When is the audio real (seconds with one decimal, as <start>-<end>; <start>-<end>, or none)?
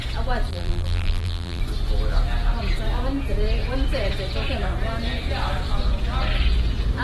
0.0-0.5; 1.6-7.0